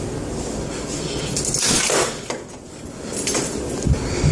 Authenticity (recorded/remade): recorded